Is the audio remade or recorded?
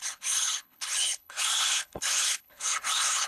remade